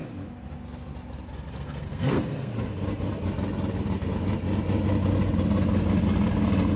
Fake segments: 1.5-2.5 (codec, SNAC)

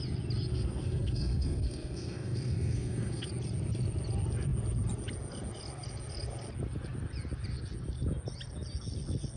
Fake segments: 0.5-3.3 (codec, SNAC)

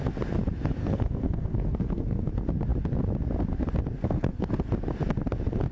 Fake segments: 0.8-2.3 (codec, SNAC); 4.0-4.5

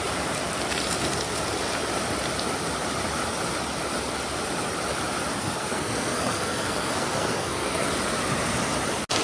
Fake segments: 5.4-7.9 (codec, SNAC)

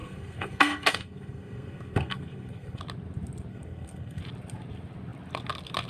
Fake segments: 0.0-2.8 (codec, SNAC); 3.5-4.2